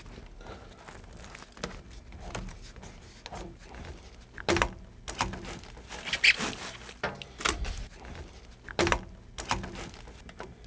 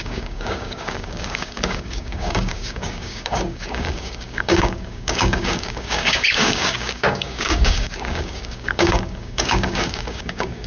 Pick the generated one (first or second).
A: second